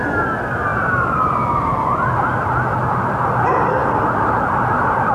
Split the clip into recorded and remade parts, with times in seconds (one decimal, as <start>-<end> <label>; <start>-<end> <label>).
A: 0.0-0.7 recorded; 0.7-2.1 remade; 2.1-5.1 recorded